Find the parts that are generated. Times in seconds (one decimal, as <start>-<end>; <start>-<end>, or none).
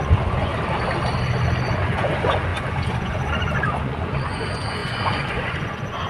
0.0-0.5; 1.7-6.1